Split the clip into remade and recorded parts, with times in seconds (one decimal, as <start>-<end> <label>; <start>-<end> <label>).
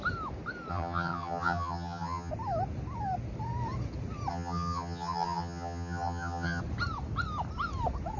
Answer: 0.0-0.7 recorded; 0.7-2.3 remade; 2.3-4.3 recorded; 4.3-6.6 remade; 6.6-8.2 recorded